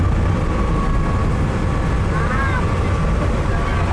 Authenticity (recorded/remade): recorded